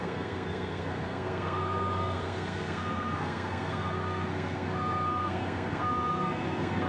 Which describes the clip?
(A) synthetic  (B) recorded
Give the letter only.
A